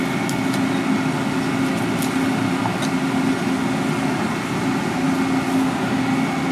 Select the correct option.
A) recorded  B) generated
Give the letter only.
A